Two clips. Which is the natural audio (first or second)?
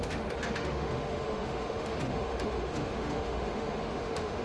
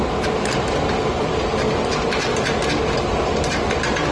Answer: second